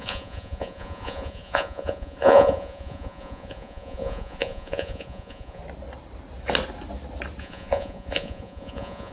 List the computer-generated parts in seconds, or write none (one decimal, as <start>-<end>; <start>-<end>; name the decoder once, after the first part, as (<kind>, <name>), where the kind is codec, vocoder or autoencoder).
0.0-5.6 (vocoder, Vocos); 7.4-9.1